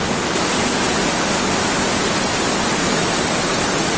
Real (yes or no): yes